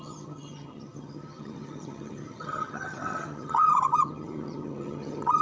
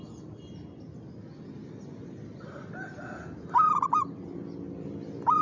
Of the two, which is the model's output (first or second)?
first